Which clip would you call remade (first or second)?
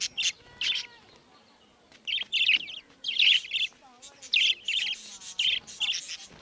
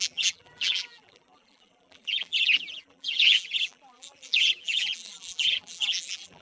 second